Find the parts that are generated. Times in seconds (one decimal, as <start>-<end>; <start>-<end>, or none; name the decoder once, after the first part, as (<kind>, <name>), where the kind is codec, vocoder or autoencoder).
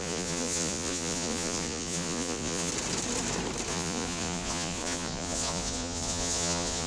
0.0-2.7 (vocoder, Vocos); 3.7-6.9